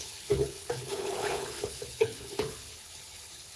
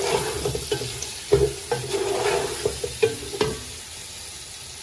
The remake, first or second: first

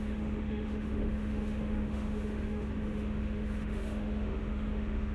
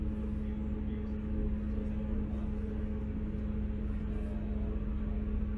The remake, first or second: first